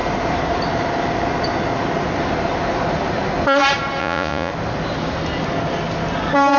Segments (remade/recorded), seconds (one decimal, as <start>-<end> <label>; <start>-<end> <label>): 0.0-4.0 recorded; 4.0-4.5 remade; 4.5-6.6 recorded